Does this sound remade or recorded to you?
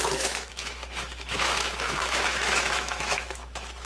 remade